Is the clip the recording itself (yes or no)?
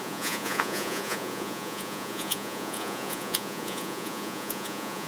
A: no